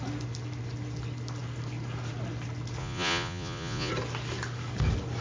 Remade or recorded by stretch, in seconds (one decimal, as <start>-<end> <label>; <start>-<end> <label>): 0.0-2.8 recorded; 2.8-3.9 remade; 3.9-5.2 recorded